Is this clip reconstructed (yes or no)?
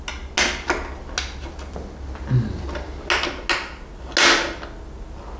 no